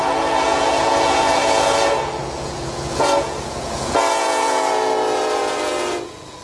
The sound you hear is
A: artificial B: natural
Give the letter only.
A